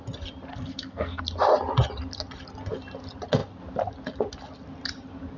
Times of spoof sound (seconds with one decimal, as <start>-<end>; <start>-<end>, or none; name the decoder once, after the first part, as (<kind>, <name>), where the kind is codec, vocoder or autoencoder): 0.5-1.2 (codec, SNAC)